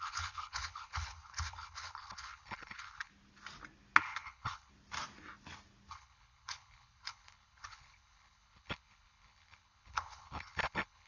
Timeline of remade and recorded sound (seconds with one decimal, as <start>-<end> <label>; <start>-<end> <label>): 0.0-3.1 remade; 3.1-4.0 recorded; 4.0-4.7 remade; 4.7-5.9 recorded; 5.9-11.1 remade